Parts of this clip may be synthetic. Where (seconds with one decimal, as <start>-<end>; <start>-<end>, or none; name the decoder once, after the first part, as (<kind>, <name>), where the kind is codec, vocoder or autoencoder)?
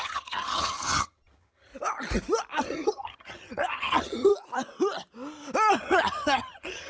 0.0-1.7 (vocoder, HiFi-GAN); 2.6-4.3; 5.8-6.9